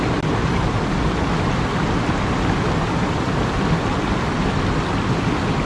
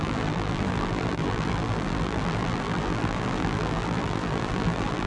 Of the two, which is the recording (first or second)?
first